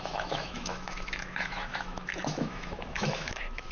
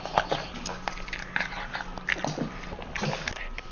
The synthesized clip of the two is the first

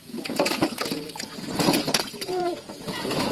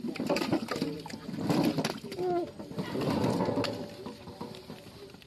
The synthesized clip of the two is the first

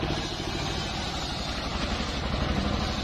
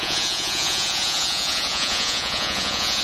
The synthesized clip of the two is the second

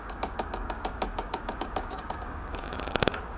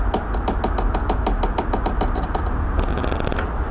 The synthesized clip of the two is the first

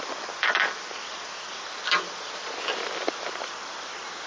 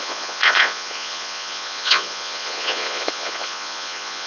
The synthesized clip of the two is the second